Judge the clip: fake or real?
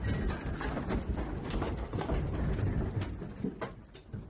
real